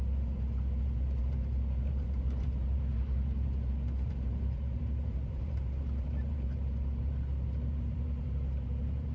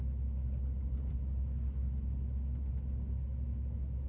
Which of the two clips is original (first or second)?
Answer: second